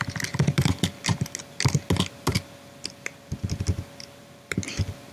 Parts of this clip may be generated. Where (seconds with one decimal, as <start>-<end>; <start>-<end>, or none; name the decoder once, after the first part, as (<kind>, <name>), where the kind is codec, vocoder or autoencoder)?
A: none